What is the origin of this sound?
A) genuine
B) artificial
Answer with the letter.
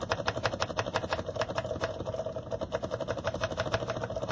A